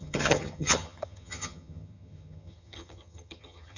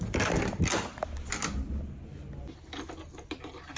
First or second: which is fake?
first